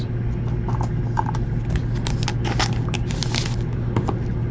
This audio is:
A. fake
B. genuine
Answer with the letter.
B